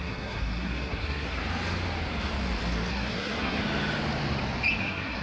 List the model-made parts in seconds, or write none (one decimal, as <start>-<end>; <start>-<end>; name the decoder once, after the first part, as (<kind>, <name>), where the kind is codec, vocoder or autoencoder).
0.0-1.4 (codec, SNAC); 2.9-3.6; 4.8-5.2